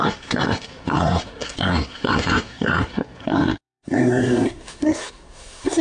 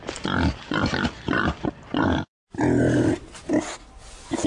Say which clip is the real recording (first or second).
second